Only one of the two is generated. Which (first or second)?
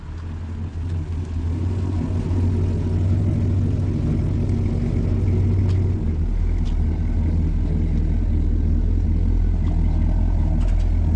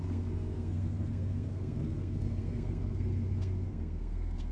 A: second